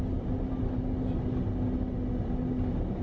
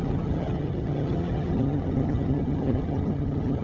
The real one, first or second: first